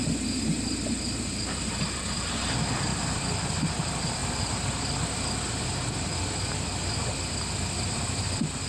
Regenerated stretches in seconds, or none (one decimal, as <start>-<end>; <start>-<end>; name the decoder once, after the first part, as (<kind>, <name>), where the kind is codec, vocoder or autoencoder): 2.0-8.7 (vocoder, BigVGAN v2)